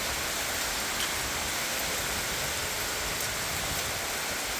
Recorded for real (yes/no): yes